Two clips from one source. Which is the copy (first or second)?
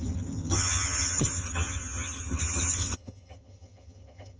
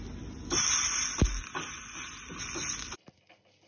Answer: first